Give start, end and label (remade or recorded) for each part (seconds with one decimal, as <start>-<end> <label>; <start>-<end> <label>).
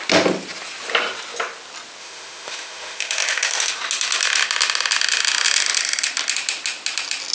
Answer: 0.0-2.0 recorded; 2.0-3.7 remade; 3.7-7.3 recorded